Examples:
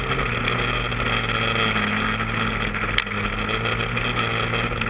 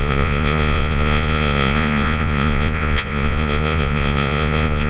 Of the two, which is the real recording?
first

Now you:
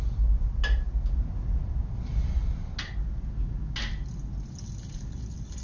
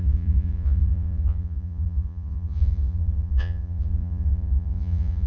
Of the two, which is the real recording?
first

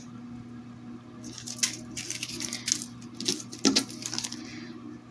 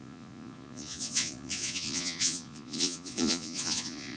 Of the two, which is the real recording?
first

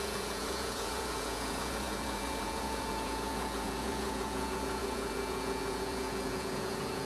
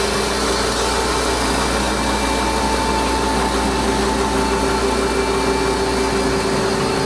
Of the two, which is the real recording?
second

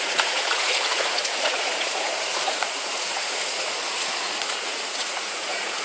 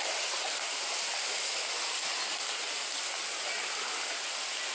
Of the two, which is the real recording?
second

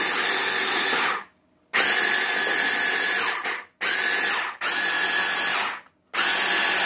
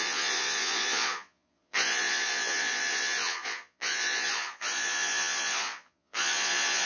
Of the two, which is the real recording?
first